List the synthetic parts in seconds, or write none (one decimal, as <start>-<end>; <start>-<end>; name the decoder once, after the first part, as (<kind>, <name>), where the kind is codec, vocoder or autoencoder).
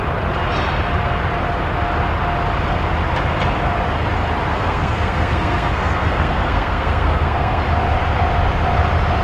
4.5-7.6 (codec, SNAC)